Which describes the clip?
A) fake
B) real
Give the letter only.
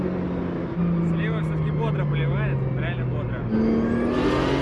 B